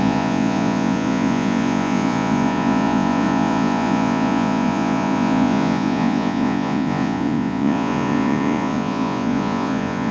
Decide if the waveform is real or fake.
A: fake